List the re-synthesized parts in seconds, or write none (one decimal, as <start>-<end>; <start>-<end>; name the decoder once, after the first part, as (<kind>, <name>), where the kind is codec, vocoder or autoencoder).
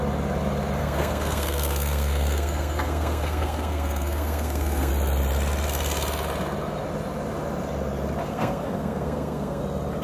0.8-4.9 (codec, SNAC); 8.2-9.6